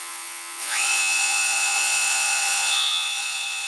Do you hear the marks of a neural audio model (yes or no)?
yes